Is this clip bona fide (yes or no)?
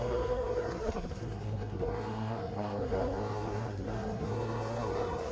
no